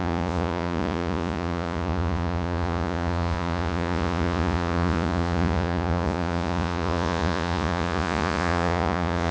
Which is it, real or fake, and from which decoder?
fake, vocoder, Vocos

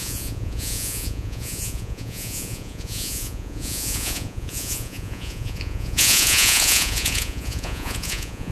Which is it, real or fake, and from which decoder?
fake, vocoder, Vocos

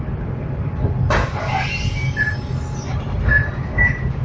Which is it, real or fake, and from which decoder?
real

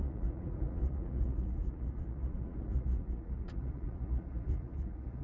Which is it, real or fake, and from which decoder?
fake, vocoder, Vocos